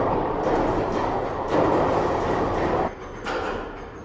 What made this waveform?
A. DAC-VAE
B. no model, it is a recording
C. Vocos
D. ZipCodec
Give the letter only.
B